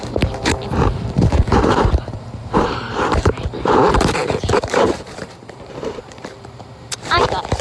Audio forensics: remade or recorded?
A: remade